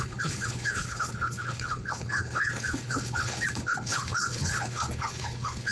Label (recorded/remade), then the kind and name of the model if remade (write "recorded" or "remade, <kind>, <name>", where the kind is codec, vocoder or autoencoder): remade, codec, HILCodec